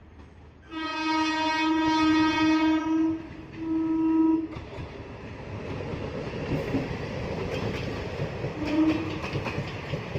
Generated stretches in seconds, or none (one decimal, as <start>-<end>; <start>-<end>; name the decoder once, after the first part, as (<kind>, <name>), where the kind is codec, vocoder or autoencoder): none